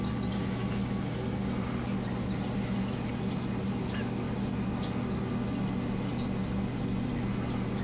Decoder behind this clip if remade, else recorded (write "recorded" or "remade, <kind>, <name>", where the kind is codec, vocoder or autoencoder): recorded